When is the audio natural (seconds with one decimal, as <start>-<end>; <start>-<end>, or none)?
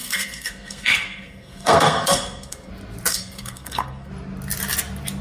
2.7-3.1; 4.1-5.2